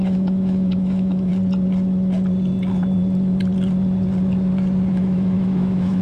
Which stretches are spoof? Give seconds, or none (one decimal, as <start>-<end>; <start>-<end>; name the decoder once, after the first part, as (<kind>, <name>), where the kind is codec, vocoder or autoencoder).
0.0-1.3 (autoencoder, DAC-VAE); 4.9-6.0